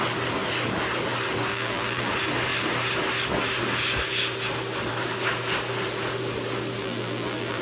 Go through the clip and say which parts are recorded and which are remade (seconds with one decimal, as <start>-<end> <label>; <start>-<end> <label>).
0.0-1.5 recorded; 1.5-2.1 remade; 2.1-6.8 recorded; 6.8-7.6 remade

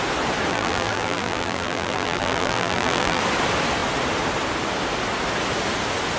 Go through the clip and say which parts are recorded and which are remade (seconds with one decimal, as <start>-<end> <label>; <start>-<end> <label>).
0.0-0.5 recorded; 0.5-3.2 remade; 3.2-6.2 recorded